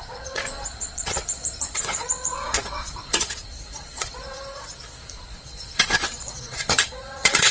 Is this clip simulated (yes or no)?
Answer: yes